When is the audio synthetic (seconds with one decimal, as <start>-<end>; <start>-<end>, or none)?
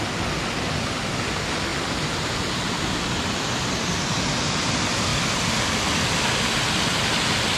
none